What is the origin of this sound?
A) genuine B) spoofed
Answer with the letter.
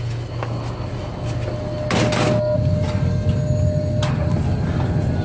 A